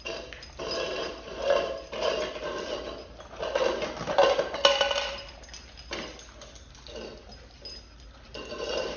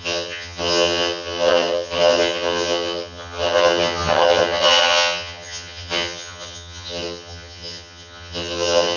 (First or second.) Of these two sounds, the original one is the first